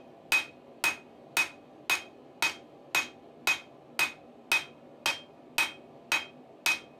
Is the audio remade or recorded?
recorded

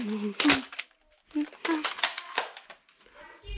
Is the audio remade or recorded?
recorded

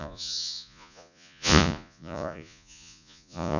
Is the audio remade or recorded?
remade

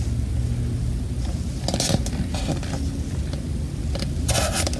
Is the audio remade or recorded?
recorded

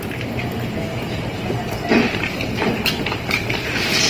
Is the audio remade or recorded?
remade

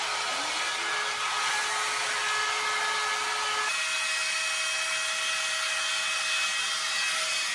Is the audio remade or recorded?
recorded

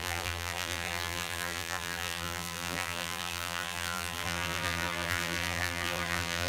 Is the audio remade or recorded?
remade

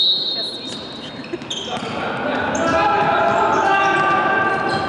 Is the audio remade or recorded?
recorded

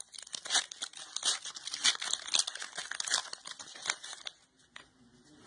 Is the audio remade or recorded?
recorded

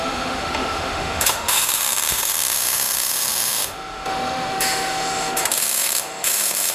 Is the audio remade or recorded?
remade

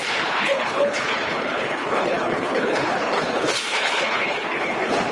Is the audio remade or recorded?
remade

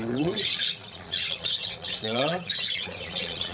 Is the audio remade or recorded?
remade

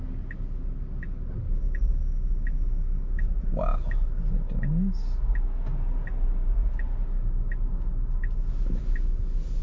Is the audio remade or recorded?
recorded